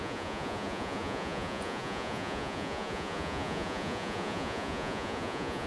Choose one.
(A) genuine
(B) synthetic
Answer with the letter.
B